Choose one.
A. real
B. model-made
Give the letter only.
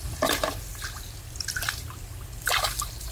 B